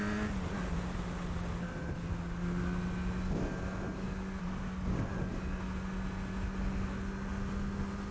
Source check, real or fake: real